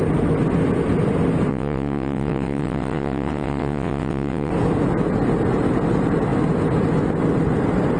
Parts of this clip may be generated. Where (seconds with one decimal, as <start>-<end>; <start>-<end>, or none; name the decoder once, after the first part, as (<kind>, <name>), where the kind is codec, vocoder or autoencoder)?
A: 1.5-4.5 (vocoder, WaveNeXt)